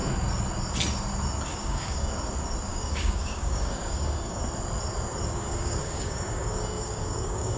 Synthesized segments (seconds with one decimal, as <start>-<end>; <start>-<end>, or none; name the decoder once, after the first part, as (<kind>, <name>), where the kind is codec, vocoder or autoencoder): 1.5-2.1 (codec, DAC); 2.7-4.4; 5.4-7.6